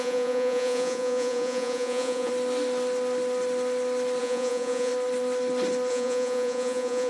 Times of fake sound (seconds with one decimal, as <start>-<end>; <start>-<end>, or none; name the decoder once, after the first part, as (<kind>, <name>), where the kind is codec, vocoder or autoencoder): 0.0-2.3 (vocoder, Vocos); 4.2-4.9; 5.9-7.1